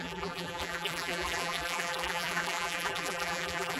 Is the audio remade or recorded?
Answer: remade